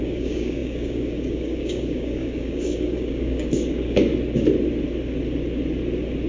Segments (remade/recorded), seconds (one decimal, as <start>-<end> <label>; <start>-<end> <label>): 0.0-4.1 remade; 4.1-6.3 recorded